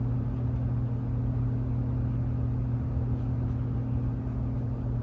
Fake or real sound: real